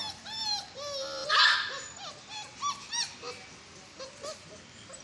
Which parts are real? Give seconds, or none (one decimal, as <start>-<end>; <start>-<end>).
0.0-5.0